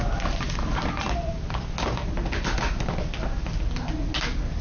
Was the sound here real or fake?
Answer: real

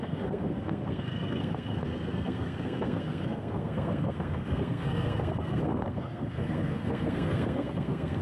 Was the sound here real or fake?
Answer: fake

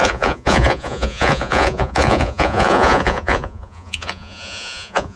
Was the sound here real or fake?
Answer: fake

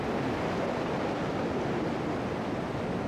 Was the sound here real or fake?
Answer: real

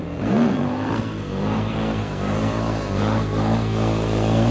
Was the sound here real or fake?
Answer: fake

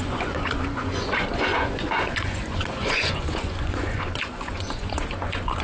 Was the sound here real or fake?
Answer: fake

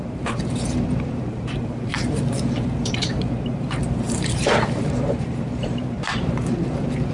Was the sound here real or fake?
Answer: fake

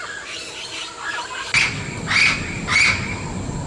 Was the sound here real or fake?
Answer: real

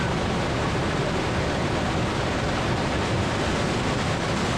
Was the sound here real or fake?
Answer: real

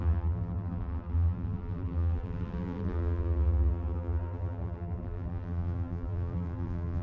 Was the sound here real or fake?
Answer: fake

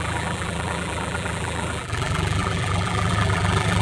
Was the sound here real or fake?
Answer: fake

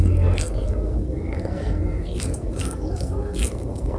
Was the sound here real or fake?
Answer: fake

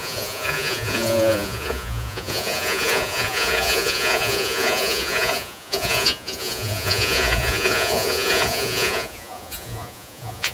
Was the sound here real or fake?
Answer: fake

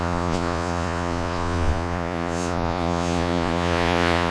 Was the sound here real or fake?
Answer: fake